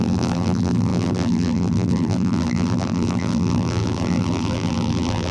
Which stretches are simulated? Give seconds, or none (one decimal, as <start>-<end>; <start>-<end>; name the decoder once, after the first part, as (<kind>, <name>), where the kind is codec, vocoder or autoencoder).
0.0-5.3 (vocoder, BigVGAN v2)